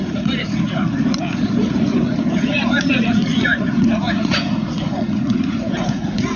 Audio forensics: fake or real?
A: fake